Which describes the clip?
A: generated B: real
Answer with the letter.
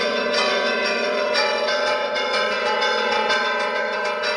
A